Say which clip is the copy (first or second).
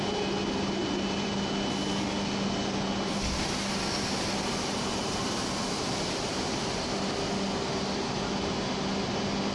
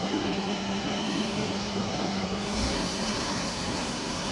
second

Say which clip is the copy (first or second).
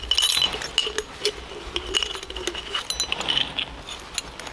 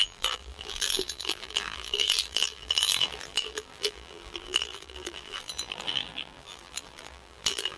second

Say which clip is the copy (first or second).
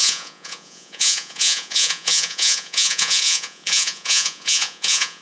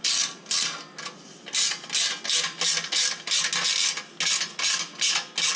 first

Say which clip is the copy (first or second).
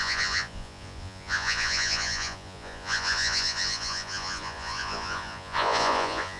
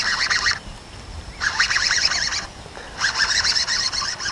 first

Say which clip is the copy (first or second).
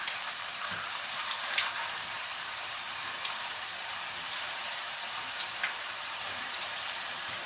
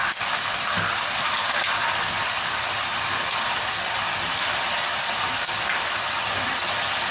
first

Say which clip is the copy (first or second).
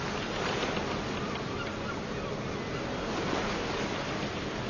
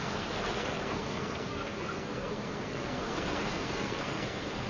second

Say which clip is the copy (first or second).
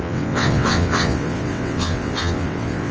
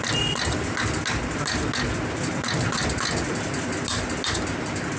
first